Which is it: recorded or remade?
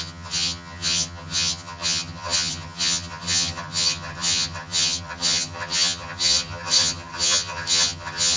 remade